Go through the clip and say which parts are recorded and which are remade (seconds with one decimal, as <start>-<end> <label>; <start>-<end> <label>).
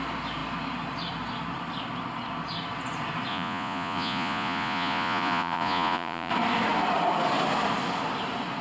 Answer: 0.0-3.3 recorded; 3.3-6.3 remade; 6.3-8.6 recorded